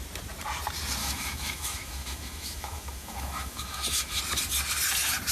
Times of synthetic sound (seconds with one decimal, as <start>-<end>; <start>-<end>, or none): 1.0-4.2